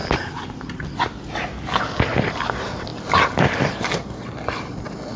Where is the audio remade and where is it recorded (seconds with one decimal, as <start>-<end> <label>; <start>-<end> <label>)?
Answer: 0.0-5.2 recorded